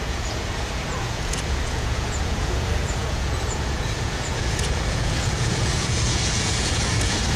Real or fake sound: fake